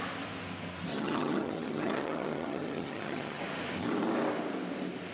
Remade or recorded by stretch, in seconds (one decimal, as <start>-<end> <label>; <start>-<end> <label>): 0.0-0.9 recorded; 0.9-3.4 remade; 3.4-5.1 recorded